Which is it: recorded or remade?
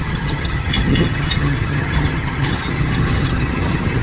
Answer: remade